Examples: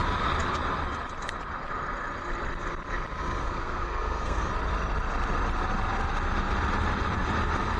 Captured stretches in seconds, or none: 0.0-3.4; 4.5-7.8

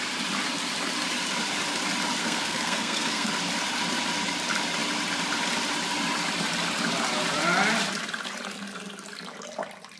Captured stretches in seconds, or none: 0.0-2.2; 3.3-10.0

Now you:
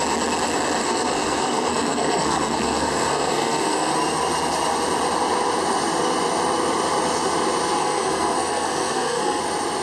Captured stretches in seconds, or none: 0.0-0.8; 3.9-7.8; 9.4-9.8

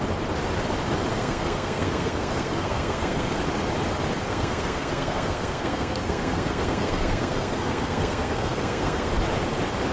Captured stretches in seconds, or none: 0.0-1.1; 3.4-4.3; 9.1-9.9